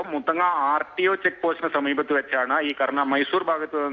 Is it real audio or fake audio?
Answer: real